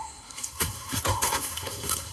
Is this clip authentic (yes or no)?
no